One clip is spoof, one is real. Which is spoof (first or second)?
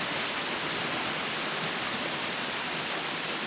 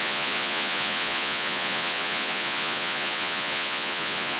second